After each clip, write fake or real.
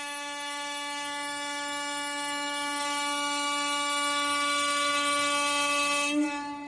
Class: fake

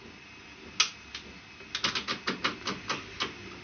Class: real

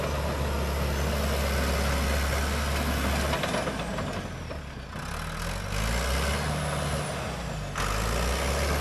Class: real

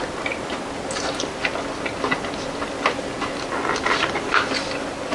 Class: real